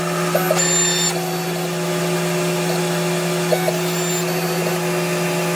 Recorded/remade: recorded